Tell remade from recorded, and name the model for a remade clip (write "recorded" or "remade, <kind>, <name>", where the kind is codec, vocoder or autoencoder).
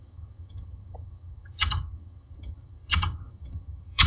remade, vocoder, HiFi-GAN